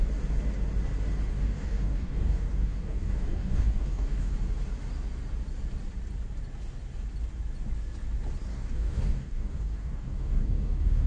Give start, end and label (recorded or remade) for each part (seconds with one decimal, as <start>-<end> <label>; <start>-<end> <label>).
0.0-1.3 recorded; 1.3-4.3 remade; 4.3-8.5 recorded; 8.5-11.1 remade